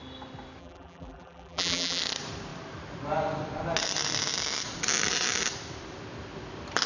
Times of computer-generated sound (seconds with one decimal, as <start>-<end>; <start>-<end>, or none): 0.6-2.0